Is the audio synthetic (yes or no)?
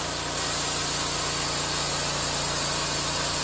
no